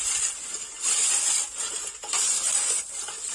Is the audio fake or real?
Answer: real